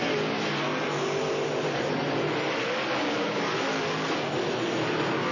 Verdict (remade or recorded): recorded